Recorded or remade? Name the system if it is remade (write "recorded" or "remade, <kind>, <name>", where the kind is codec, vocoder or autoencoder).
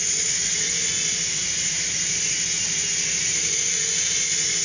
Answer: remade, vocoder, Vocos